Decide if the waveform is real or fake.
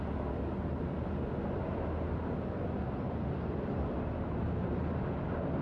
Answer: real